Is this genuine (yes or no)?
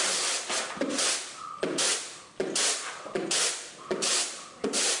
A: yes